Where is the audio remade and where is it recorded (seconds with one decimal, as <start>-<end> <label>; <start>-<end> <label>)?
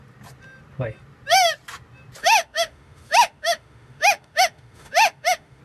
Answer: 0.0-2.2 recorded; 2.2-5.6 remade